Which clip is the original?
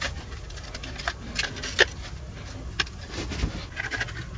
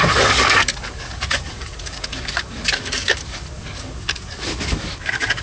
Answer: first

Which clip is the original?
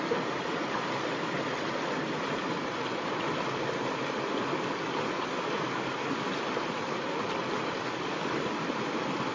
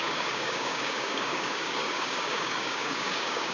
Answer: first